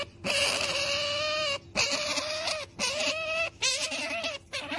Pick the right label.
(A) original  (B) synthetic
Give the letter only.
A